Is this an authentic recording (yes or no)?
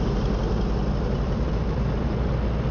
yes